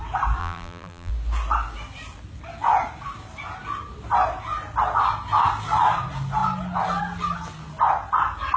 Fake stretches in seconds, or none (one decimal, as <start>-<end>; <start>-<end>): 0.4-1.1